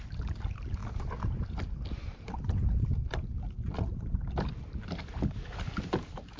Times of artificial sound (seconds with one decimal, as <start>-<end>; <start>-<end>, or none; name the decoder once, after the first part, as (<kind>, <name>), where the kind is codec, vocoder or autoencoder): none